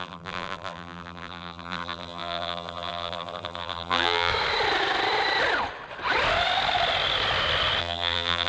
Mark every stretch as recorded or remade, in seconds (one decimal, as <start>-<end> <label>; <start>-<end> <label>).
0.0-4.3 remade; 4.3-7.8 recorded; 7.8-8.5 remade